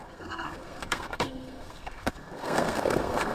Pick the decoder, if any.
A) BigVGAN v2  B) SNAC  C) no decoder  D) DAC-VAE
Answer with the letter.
B